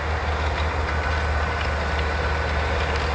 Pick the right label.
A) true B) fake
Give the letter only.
A